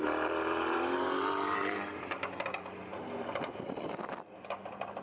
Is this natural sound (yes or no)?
no